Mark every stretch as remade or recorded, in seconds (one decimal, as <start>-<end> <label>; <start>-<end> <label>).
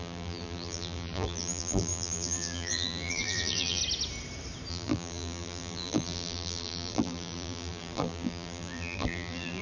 0.0-3.8 remade; 3.8-4.7 recorded; 4.7-9.6 remade